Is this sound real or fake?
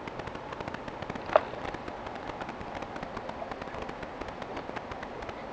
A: real